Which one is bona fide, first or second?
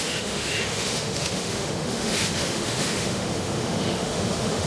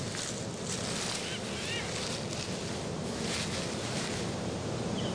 second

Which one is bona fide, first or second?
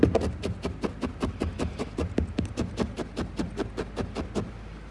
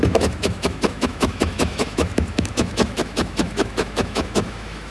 first